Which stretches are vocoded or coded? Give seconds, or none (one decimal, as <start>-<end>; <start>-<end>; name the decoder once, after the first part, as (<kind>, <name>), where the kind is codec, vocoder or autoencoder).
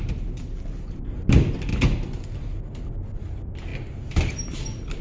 none